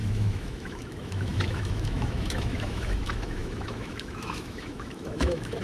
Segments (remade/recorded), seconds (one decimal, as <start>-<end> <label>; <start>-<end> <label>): 0.0-5.6 remade